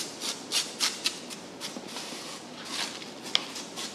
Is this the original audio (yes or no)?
yes